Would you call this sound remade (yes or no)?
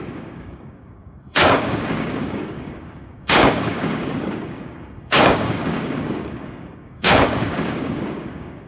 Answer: yes